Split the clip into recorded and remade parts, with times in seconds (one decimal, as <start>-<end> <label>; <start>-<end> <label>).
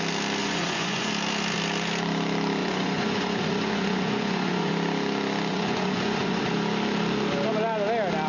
0.0-0.4 recorded; 0.4-1.1 remade; 1.1-2.6 recorded; 2.6-4.7 remade; 4.7-5.5 recorded; 5.5-6.4 remade; 6.4-8.3 recorded